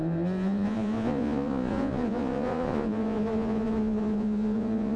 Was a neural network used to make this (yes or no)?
yes